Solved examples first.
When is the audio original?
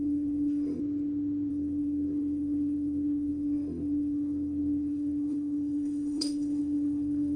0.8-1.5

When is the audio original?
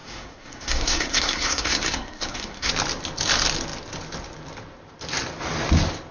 2.7-6.1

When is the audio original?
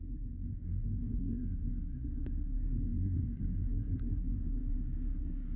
none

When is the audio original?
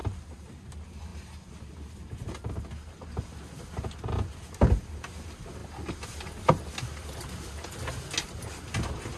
0.0-9.2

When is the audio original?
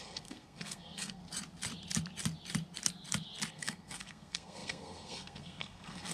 1.2-3.5